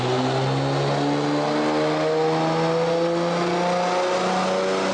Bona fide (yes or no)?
yes